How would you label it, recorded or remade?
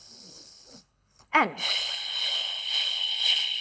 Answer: remade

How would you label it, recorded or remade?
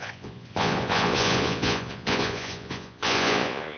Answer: remade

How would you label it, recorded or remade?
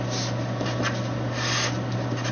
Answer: recorded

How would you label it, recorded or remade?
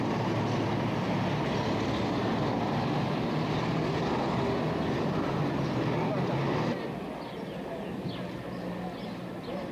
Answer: recorded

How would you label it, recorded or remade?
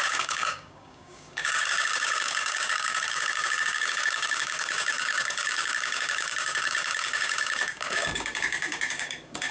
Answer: remade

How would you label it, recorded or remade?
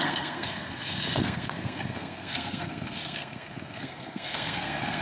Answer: remade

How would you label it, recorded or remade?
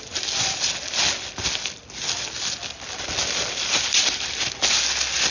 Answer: recorded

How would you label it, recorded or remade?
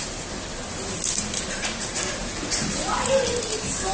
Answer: recorded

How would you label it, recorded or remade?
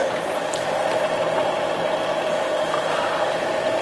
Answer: recorded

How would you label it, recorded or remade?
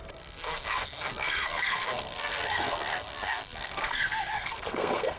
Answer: remade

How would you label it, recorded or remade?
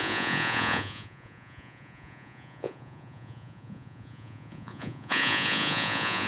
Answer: remade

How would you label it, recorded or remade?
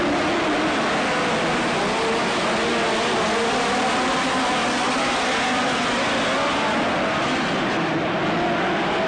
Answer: recorded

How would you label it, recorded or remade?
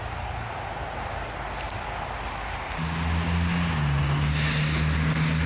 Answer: recorded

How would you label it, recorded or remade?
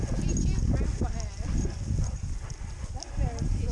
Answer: recorded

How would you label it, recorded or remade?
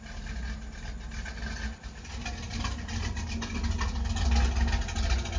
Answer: recorded